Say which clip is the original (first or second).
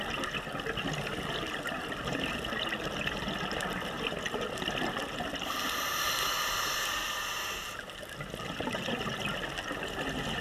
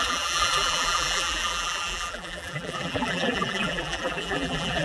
first